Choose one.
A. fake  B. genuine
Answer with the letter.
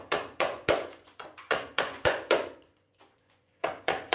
A